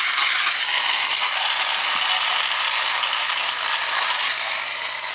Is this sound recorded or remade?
recorded